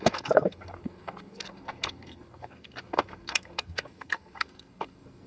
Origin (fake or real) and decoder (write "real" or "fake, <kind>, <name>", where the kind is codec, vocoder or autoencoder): fake, codec, SNAC